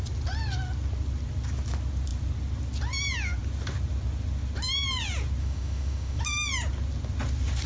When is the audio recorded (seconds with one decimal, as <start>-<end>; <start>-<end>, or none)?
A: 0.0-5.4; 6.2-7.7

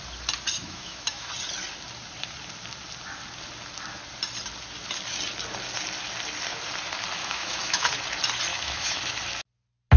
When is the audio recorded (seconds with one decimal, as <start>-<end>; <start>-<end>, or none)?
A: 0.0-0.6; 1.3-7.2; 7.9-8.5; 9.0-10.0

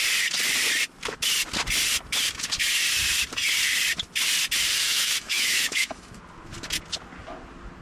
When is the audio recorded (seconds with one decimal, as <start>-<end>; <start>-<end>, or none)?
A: 0.0-4.7; 6.2-7.8